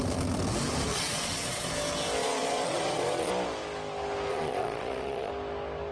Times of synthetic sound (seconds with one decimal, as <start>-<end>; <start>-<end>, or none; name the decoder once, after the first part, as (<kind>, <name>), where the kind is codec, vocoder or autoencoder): 0.9-1.7 (vocoder, Vocos); 2.2-3.3; 4.3-5.3